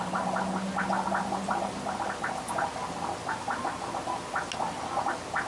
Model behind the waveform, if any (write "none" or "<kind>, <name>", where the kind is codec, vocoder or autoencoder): none